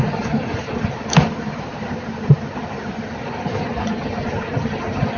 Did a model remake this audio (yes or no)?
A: no